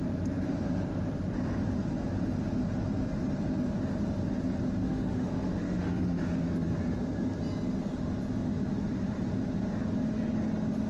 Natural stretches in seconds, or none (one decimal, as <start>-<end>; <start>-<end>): 0.0-4.8; 6.2-10.9